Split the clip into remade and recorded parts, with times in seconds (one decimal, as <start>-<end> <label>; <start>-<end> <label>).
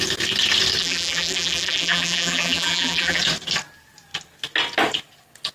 0.0-0.8 recorded; 0.8-3.2 remade; 3.2-5.5 recorded